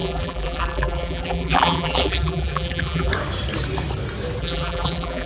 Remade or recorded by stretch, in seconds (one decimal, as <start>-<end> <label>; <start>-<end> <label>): 0.0-3.1 remade; 3.1-4.4 recorded; 4.4-5.3 remade